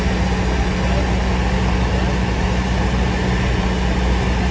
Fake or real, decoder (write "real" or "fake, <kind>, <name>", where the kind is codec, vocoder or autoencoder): real